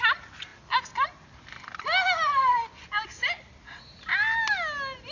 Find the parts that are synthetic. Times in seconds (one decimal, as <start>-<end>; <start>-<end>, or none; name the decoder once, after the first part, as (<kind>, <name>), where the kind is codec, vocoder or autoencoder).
none